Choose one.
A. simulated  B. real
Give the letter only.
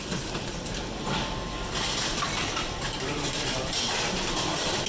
B